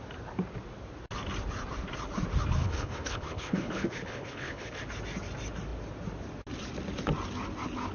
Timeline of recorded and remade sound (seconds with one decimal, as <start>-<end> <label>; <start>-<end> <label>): 0.0-2.6 recorded; 2.6-4.8 remade; 4.8-7.9 recorded